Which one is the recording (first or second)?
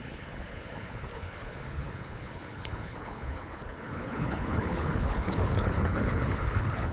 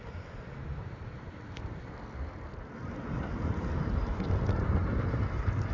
second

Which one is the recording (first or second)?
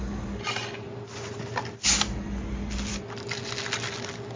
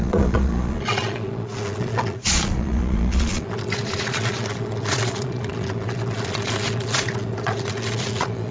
first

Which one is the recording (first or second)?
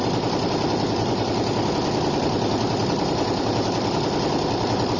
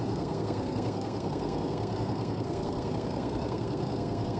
first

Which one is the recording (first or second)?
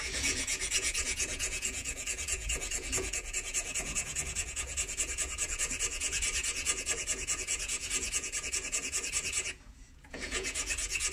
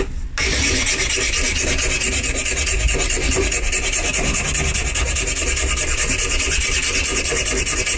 second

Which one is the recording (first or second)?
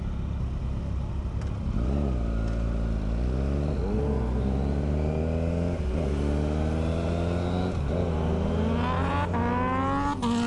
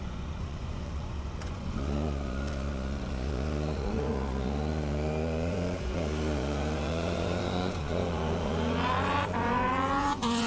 first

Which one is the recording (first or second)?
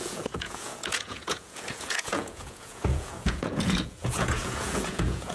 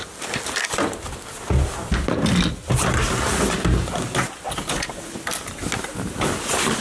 second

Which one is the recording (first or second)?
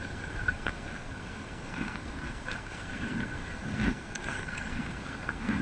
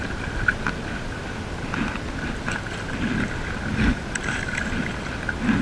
second